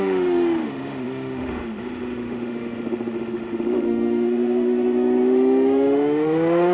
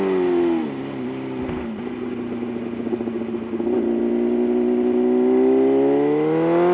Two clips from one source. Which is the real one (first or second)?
second